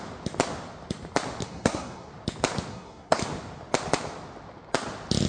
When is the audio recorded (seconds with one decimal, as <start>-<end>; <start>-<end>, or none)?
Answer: 0.0-1.4; 2.1-2.7; 3.2-5.3